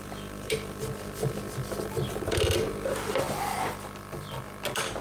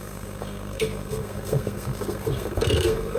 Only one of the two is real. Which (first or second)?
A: first